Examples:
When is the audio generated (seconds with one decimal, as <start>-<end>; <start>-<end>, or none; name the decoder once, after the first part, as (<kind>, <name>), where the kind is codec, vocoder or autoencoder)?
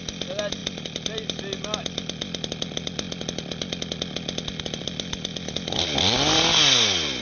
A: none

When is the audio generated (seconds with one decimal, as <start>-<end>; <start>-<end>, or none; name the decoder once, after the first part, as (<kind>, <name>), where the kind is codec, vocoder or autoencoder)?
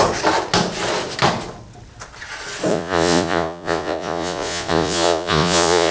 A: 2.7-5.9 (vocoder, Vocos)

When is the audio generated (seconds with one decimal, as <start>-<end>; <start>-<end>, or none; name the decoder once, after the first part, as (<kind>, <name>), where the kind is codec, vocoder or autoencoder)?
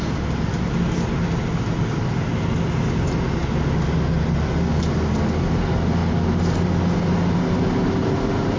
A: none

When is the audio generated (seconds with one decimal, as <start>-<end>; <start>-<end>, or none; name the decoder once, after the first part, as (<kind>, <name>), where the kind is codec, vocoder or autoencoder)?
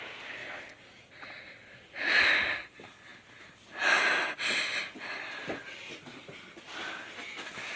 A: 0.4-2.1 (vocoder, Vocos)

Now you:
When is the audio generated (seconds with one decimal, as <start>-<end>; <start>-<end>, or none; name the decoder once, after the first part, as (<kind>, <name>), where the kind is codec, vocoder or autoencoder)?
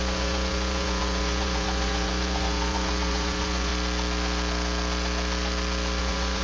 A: 0.0-3.7 (vocoder, Vocos); 6.0-6.4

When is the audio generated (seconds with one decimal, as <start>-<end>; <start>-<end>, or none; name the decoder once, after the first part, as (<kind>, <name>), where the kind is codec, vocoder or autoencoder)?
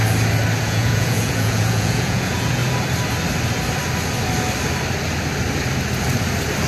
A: 0.6-2.6 (vocoder, Vocos)